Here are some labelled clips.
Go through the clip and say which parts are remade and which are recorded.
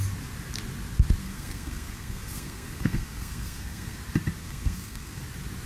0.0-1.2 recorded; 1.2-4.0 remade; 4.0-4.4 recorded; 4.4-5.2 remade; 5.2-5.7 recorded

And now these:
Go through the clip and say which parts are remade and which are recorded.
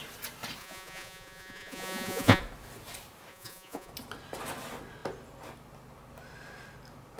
0.0-0.6 recorded; 0.6-2.4 remade; 2.4-3.3 recorded; 3.3-3.9 remade; 3.9-7.2 recorded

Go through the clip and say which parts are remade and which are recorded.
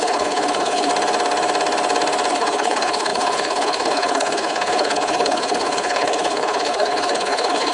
0.0-0.9 remade; 0.9-2.3 recorded; 2.3-7.7 remade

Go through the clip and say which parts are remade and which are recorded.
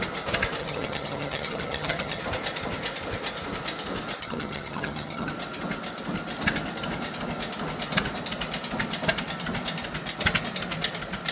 0.0-0.6 recorded; 0.6-2.2 remade; 2.2-4.2 recorded; 4.2-5.3 remade; 5.3-11.3 recorded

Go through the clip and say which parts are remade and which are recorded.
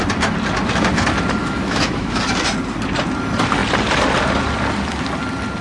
0.0-1.4 recorded; 1.4-2.2 remade; 2.2-5.6 recorded